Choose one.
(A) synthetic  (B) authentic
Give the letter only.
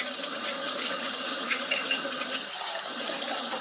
A